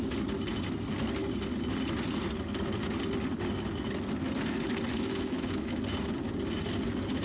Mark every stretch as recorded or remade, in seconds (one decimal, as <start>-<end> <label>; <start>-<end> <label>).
0.0-4.9 recorded; 4.9-5.8 remade; 5.8-7.2 recorded